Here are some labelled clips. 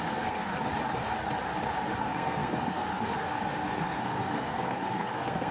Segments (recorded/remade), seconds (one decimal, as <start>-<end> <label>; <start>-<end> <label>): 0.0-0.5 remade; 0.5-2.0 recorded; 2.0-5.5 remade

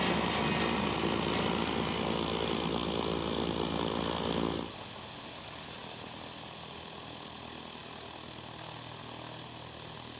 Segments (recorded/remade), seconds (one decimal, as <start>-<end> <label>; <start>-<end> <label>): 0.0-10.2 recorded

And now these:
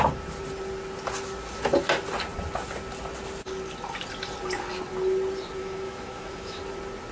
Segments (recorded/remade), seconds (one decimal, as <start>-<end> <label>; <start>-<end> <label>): 0.0-5.6 recorded; 5.6-6.6 remade; 6.6-7.1 recorded